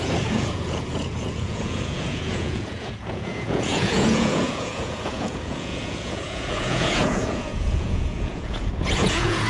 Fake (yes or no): yes